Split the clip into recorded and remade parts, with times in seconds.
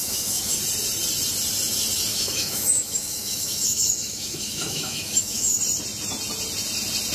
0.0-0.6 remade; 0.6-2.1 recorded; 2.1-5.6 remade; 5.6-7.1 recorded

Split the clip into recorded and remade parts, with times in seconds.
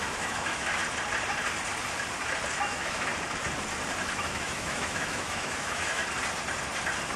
0.0-0.8 remade; 0.8-2.6 recorded; 2.6-3.1 remade; 3.1-4.1 recorded; 4.1-6.0 remade; 6.0-7.2 recorded